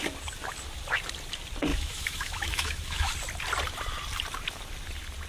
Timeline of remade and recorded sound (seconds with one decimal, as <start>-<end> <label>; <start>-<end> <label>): 0.0-1.7 recorded; 1.7-3.1 remade; 3.1-5.3 recorded